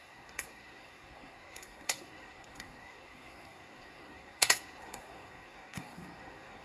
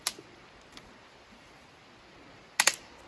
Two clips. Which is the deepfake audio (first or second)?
first